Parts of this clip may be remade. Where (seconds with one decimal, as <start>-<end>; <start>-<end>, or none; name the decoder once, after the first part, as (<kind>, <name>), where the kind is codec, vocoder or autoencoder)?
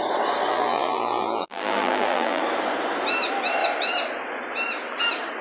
0.5-2.4 (vocoder, BigVGAN v2)